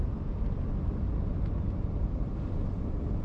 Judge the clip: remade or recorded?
recorded